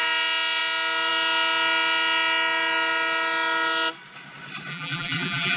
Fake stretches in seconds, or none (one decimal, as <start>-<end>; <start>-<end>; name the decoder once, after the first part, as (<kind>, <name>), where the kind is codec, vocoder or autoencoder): 4.7-5.6 (vocoder, BigVGAN v2)